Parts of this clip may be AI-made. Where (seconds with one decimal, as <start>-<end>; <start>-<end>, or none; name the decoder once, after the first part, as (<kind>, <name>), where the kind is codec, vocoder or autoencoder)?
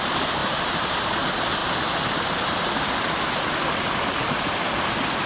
0.4-1.2 (vocoder, BigVGAN v2)